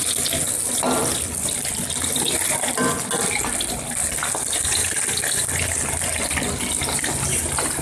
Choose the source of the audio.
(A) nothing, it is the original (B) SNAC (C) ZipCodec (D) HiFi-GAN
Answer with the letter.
A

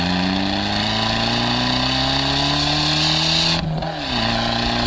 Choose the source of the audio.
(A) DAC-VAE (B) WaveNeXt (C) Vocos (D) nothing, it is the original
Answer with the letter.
D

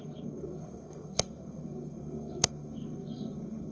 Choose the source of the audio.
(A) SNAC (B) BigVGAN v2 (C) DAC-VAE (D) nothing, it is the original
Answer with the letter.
A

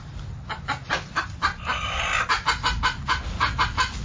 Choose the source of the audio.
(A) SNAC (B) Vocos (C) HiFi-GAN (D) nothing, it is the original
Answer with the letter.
D